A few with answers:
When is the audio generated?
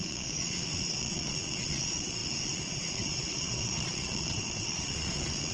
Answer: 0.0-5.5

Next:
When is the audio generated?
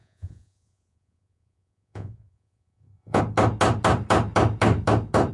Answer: 0.0-3.2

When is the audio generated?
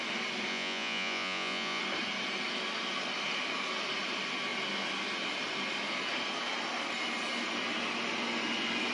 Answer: 0.5-1.8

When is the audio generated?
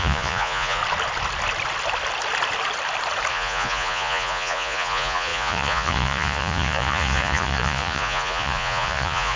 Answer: 0.0-0.8; 3.3-9.4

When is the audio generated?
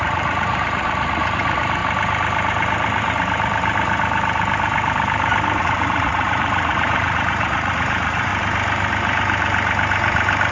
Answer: 0.0-1.8; 5.6-8.3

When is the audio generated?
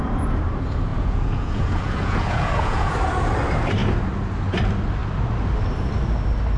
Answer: 0.9-2.9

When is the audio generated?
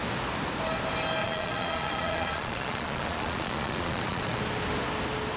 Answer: 1.2-4.4